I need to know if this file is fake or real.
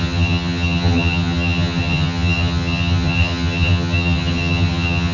fake